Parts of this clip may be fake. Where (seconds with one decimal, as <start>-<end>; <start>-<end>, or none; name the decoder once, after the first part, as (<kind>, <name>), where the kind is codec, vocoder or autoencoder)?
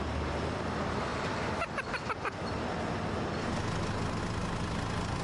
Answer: none